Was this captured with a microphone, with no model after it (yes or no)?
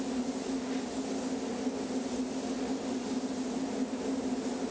yes